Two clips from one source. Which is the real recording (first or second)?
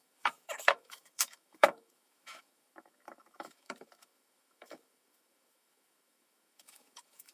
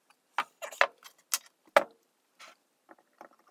second